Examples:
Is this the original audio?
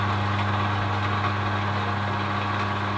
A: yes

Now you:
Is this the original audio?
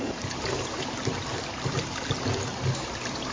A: yes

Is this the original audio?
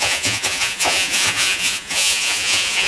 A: no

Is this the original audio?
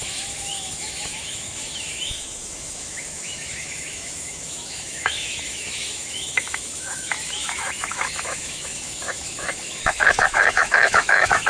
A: no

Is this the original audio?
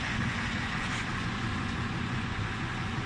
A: no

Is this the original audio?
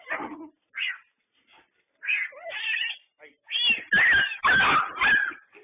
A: yes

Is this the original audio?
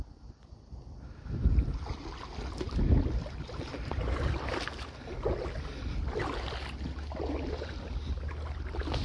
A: yes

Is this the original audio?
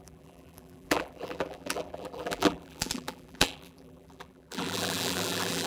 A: no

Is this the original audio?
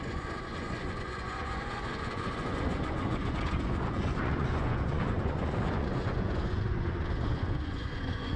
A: no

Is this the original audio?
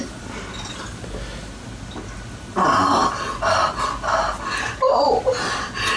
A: yes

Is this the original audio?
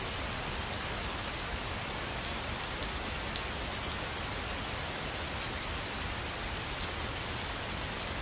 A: yes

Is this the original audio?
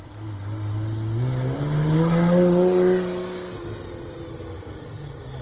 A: yes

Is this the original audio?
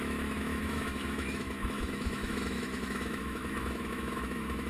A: no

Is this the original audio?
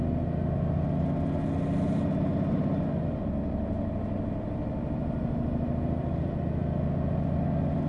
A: yes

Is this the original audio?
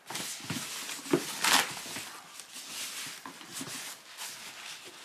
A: yes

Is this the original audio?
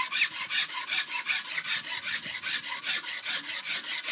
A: yes